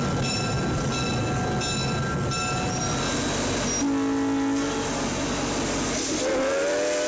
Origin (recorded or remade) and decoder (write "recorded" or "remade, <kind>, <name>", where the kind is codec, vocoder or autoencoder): recorded